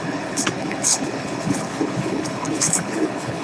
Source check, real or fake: fake